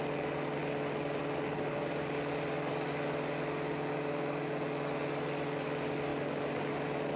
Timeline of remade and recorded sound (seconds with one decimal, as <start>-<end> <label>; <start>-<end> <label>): 0.0-7.2 recorded

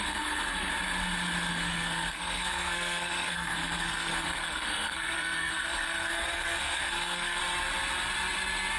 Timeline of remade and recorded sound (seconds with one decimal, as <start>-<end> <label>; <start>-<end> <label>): 0.0-0.7 remade; 0.7-1.5 recorded; 1.5-7.4 remade; 7.4-8.8 recorded

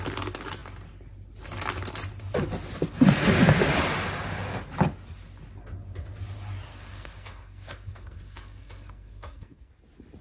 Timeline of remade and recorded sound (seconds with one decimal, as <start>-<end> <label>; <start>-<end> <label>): 0.0-6.7 recorded; 6.7-9.7 remade; 9.7-10.2 recorded

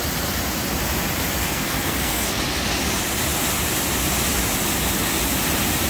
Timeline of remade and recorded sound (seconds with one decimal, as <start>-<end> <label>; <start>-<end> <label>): 0.0-1.4 recorded; 1.4-2.4 remade; 2.4-5.9 recorded

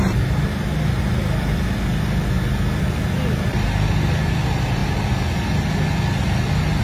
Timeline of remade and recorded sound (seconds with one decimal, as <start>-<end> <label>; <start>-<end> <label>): 0.0-6.8 recorded

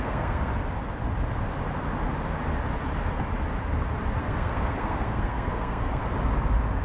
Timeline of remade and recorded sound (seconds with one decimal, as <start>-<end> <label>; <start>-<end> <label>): 0.0-0.5 remade; 0.5-4.2 recorded; 4.2-6.0 remade; 6.0-6.8 recorded

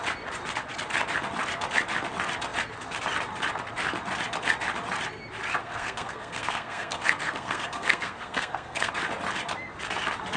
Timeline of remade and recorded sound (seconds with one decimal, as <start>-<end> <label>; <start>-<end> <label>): 0.0-5.6 recorded; 5.6-8.9 remade; 8.9-10.4 recorded